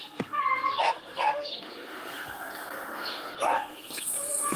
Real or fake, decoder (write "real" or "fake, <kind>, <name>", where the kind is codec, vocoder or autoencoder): fake, codec, SNAC